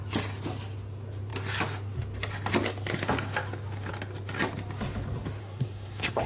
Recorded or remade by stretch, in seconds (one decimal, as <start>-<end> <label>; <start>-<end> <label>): 0.0-5.4 recorded; 5.4-6.3 remade